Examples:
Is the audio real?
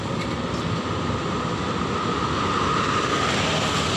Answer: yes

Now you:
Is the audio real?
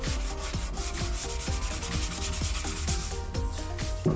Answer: yes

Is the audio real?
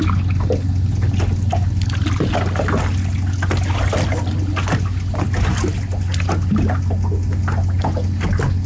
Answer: yes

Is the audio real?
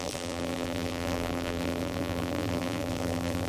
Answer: no